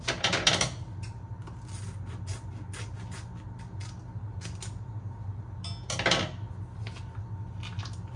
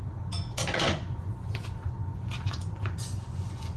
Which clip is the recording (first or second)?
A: first